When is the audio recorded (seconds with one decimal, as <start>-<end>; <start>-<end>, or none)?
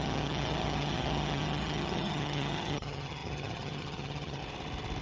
4.4-5.0